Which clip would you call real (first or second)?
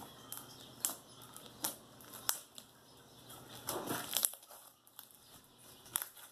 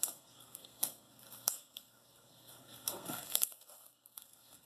first